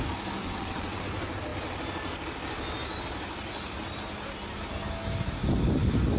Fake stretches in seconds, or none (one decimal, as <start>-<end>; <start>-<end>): 0.4-1.0